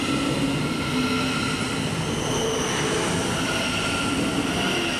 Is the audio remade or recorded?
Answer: recorded